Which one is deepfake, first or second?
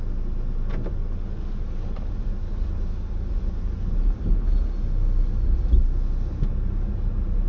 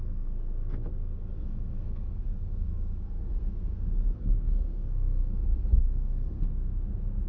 second